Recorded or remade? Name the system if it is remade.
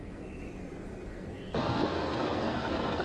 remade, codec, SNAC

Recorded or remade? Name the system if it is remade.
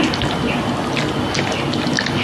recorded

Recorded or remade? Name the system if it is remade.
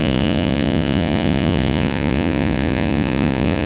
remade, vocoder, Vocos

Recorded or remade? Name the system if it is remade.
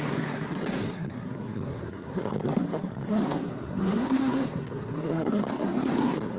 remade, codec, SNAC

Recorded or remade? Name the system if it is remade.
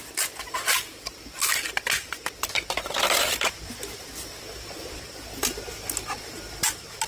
recorded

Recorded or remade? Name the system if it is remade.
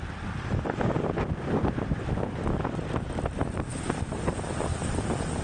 recorded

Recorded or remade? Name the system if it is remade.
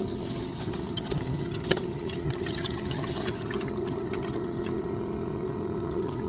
remade, vocoder, HiFi-GAN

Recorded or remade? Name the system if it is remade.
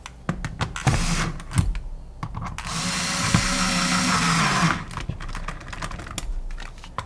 recorded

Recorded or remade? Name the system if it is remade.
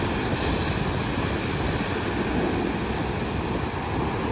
recorded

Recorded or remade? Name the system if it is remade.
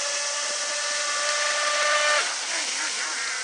recorded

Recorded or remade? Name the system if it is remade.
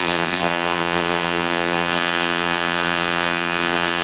remade, vocoder, BigVGAN v2